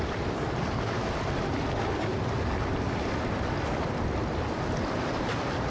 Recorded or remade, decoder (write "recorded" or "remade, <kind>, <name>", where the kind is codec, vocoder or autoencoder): recorded